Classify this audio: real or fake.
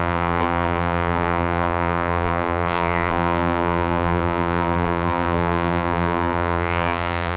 fake